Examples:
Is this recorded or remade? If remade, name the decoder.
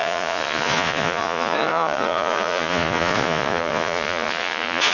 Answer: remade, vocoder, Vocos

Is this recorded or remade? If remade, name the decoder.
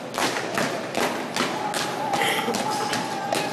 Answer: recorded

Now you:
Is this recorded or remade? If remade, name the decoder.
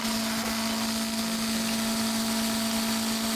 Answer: recorded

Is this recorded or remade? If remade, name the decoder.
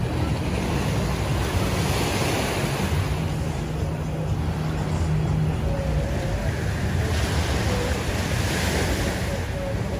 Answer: recorded